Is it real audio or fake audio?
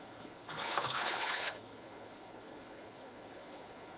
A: fake